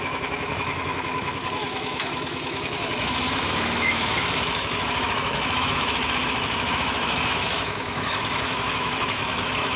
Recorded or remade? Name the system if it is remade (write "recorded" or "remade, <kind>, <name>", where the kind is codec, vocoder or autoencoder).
remade, autoencoder, DAC-VAE